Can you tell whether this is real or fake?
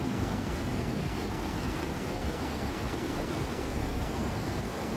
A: fake